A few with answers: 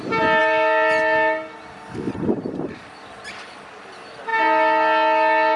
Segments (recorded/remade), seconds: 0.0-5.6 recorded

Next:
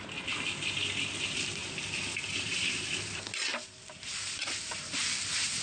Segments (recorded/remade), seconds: 0.0-1.6 recorded; 1.6-2.7 remade; 2.7-3.5 recorded; 3.5-5.0 remade; 5.0-5.6 recorded